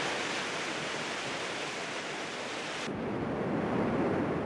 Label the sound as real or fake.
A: real